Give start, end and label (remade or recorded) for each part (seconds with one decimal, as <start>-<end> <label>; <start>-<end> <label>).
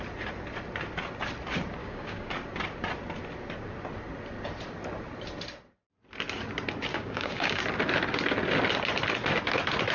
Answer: 0.0-1.8 recorded; 1.8-2.3 remade; 2.3-6.9 recorded; 6.9-7.6 remade; 7.6-9.9 recorded